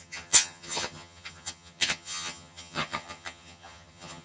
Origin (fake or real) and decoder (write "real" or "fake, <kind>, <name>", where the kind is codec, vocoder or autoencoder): fake, vocoder, HiFi-GAN